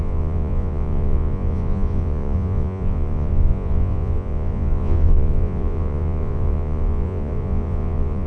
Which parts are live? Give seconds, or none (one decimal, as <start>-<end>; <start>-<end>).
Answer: none